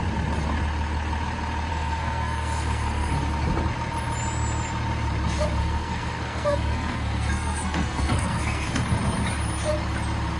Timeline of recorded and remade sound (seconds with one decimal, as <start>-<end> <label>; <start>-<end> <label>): 0.0-1.7 recorded; 1.7-3.1 remade; 3.1-5.6 recorded; 5.6-8.8 remade; 8.8-10.4 recorded